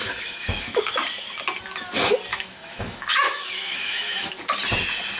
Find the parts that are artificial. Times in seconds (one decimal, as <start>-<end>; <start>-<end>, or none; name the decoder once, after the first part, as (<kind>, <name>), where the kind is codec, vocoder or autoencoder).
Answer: 0.0-0.8 (autoencoder, DAC-VAE); 2.3-4.3